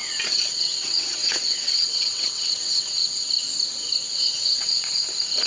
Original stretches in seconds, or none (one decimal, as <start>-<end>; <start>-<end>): 3.3-4.1; 5.0-5.5